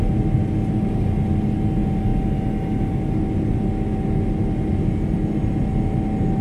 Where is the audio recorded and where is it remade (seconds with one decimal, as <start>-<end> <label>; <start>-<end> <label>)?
0.0-6.4 recorded